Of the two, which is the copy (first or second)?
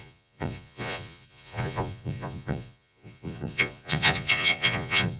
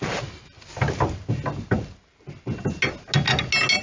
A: first